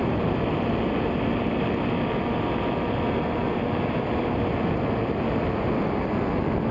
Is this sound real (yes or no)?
yes